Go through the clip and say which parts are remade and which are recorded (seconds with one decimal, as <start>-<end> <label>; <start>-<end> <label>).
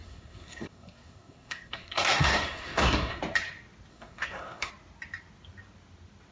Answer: 0.0-3.2 remade; 3.2-3.9 recorded; 3.9-4.7 remade; 4.7-6.3 recorded